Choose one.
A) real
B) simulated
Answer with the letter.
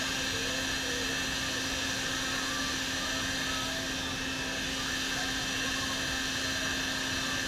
A